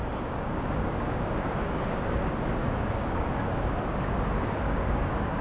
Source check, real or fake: fake